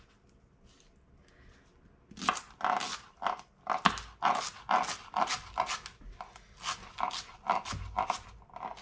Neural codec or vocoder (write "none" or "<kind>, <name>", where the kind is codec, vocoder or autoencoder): none